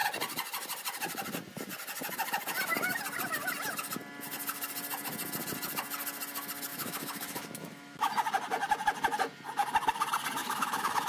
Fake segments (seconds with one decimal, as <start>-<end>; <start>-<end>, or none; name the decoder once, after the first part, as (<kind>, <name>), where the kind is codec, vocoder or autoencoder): 6.7-8.1 (autoencoder, DAC-VAE); 10.4-11.1